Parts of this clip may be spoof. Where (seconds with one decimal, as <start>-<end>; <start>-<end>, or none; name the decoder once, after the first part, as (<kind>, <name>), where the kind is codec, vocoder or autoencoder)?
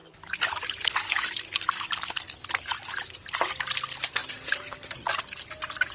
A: 0.0-2.2 (vocoder, BigVGAN v2)